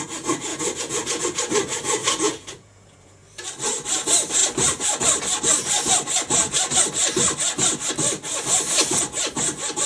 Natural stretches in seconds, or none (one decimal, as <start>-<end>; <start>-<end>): 0.0-0.5; 1.2-2.0; 3.3-9.9